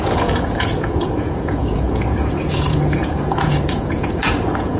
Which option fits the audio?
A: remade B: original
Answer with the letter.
A